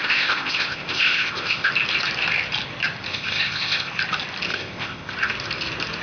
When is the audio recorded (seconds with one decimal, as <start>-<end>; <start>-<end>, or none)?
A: 1.7-3.1; 3.9-4.5; 5.1-6.0